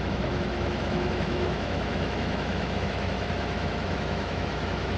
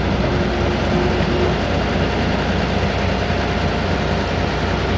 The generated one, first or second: first